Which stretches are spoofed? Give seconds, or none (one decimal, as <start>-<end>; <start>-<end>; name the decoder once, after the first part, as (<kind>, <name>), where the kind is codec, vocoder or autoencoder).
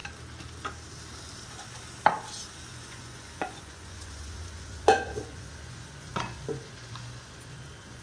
2.7-8.0 (vocoder, Vocos)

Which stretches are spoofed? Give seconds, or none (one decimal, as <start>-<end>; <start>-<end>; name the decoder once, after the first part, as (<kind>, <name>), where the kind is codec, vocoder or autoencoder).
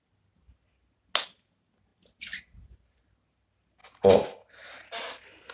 none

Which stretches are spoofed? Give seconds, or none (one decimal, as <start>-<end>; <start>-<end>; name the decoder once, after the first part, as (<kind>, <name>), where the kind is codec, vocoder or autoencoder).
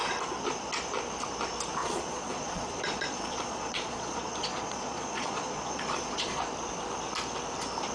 1.8-6.4 (vocoder, Vocos)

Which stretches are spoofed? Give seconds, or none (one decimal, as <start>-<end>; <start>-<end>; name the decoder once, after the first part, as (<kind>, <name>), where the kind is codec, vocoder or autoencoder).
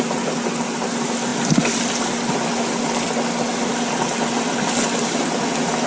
none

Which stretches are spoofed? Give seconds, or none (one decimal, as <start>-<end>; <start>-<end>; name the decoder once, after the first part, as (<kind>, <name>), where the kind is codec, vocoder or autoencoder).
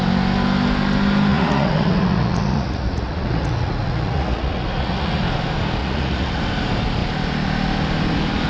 1.3-5.2 (vocoder, Vocos); 5.8-6.4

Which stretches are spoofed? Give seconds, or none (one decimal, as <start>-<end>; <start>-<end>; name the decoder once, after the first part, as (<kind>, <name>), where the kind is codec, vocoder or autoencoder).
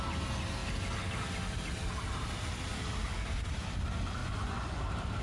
4.2-4.8 (vocoder, Vocos)